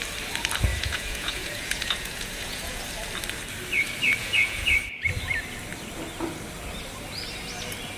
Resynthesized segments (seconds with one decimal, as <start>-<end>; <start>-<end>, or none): 0.7-2.8; 4.2-4.7